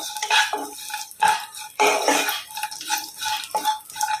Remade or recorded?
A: remade